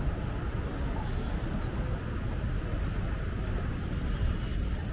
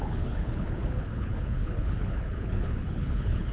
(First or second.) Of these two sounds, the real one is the first